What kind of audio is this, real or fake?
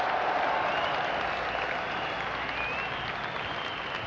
real